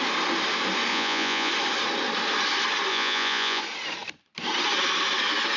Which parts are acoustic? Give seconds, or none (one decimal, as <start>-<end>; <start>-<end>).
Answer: 0.0-0.9; 1.5-2.9; 3.6-5.6